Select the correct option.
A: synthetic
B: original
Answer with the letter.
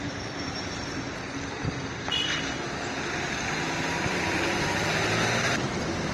A